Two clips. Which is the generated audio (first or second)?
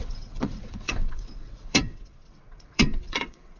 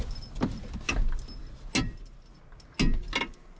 first